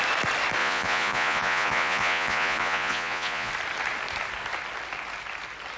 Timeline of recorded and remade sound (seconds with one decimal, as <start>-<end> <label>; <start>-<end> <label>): 0.0-0.6 recorded; 0.6-3.5 remade; 3.5-5.8 recorded